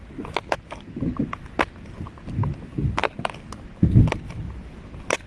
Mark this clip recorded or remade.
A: recorded